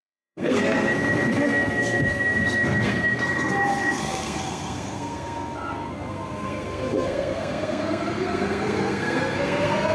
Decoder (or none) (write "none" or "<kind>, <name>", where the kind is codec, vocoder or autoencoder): codec, SNAC